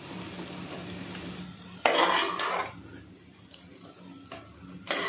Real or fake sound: real